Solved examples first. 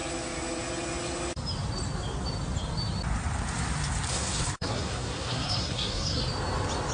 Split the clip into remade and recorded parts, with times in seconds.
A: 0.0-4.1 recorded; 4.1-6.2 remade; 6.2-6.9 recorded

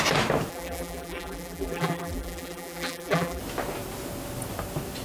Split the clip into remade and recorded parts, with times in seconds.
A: 0.0-0.5 recorded; 0.5-3.4 remade; 3.4-5.0 recorded

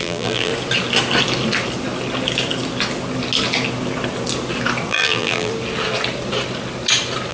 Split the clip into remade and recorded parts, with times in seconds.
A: 0.0-0.5 remade; 0.5-4.9 recorded; 4.9-5.5 remade; 5.5-7.3 recorded

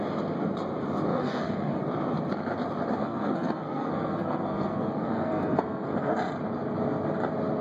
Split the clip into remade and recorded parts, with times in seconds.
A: 0.0-1.1 recorded; 1.1-1.8 remade; 1.8-3.0 recorded; 3.0-6.1 remade; 6.1-7.6 recorded

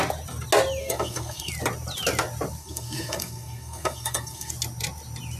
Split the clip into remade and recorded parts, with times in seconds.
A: 0.0-0.8 recorded; 0.8-1.5 remade; 1.5-2.6 recorded; 2.6-4.5 remade; 4.5-5.4 recorded